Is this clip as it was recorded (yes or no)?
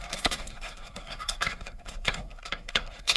no